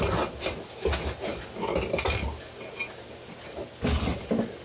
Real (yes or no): yes